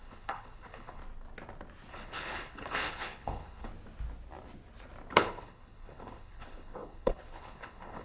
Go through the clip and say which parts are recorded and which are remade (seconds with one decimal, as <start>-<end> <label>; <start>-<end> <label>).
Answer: 0.0-1.0 remade; 1.0-1.9 recorded; 1.9-3.7 remade; 3.7-5.1 recorded; 5.1-8.0 remade